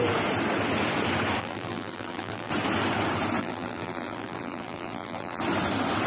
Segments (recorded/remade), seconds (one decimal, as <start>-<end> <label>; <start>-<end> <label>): 0.0-1.4 recorded; 1.4-2.5 remade; 2.5-3.4 recorded; 3.4-5.4 remade; 5.4-6.1 recorded